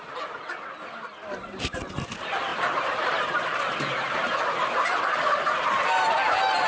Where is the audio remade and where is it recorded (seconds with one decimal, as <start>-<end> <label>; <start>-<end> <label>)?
0.0-2.5 recorded; 2.5-3.1 remade; 3.1-6.7 recorded